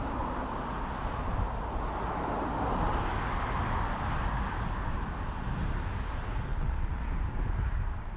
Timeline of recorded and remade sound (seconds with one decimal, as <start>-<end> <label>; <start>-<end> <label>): 0.0-6.5 recorded; 6.5-7.0 remade; 7.0-8.2 recorded